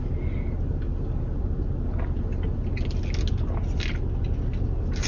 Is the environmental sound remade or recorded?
recorded